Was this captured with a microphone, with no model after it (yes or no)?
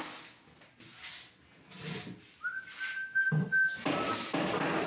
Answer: yes